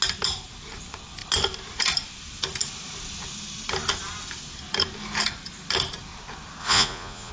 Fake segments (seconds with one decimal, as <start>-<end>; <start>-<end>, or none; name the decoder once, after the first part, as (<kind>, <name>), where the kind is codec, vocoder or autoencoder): 6.6-7.3 (vocoder, Vocos)

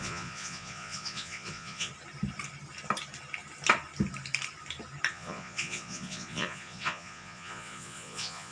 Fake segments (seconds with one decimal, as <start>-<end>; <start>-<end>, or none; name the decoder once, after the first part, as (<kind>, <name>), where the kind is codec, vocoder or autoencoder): 0.0-1.9 (vocoder, Vocos); 5.1-8.5

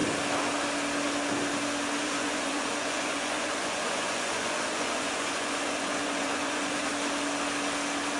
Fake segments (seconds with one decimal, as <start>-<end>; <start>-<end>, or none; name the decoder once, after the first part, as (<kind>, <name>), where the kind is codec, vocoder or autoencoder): 2.0-6.9 (vocoder, Vocos)